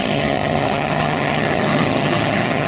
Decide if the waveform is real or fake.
fake